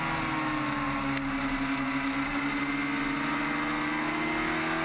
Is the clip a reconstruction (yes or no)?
no